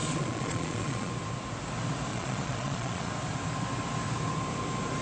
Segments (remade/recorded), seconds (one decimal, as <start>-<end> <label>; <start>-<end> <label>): 0.0-1.1 remade; 1.1-2.1 recorded; 2.1-3.1 remade; 3.1-5.0 recorded